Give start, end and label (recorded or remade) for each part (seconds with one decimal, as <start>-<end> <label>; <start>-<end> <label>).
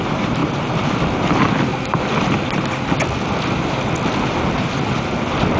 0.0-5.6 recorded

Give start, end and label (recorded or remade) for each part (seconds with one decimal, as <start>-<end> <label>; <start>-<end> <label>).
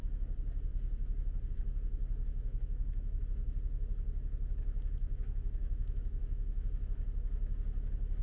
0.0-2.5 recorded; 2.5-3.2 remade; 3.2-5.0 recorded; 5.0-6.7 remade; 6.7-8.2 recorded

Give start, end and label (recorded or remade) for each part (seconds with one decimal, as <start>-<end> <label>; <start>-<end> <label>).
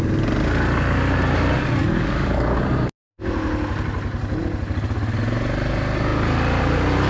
0.0-1.8 recorded; 1.8-2.6 remade; 2.6-7.1 recorded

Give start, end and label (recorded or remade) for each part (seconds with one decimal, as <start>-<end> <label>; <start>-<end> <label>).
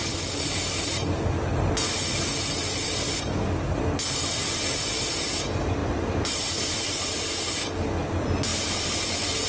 0.0-5.8 recorded; 5.8-7.0 remade; 7.0-9.5 recorded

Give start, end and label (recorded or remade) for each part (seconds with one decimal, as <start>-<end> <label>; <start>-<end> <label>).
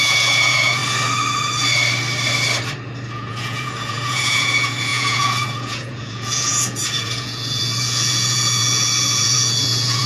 0.0-0.8 remade; 0.8-3.1 recorded; 3.1-10.1 remade